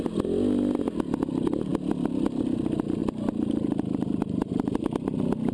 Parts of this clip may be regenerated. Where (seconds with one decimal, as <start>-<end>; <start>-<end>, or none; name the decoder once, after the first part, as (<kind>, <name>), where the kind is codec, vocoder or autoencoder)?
none